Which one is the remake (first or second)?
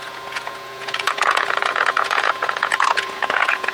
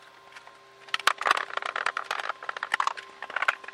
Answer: first